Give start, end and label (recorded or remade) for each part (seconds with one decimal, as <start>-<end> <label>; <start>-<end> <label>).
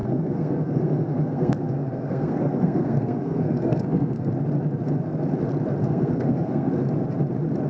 0.0-4.3 remade; 4.3-5.8 recorded; 5.8-6.7 remade; 6.7-7.7 recorded